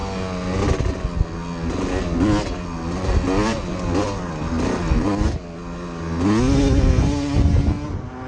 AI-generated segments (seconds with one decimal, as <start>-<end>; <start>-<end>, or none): none